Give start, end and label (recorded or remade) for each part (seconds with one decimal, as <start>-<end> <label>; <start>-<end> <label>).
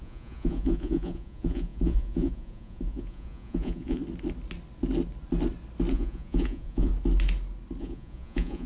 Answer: 0.0-4.0 remade; 4.0-5.9 recorded; 5.9-6.9 remade; 6.9-7.8 recorded; 7.8-8.7 remade